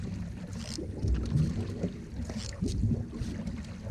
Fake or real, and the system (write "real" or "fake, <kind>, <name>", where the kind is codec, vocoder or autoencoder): real